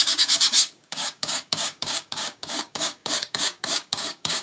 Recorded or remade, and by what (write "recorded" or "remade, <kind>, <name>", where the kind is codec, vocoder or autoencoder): remade, codec, DAC